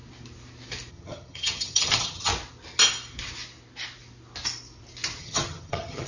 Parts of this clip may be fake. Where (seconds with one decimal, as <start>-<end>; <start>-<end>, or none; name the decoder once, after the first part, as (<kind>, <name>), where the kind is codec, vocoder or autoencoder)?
0.9-2.3 (vocoder, HiFi-GAN); 5.2-6.1